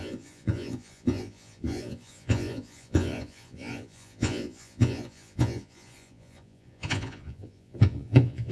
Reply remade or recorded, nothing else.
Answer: remade